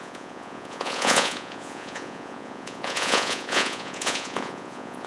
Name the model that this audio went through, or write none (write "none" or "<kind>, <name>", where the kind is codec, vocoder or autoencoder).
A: vocoder, Vocos